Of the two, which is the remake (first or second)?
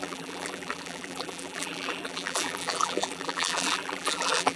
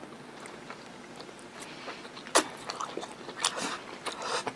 first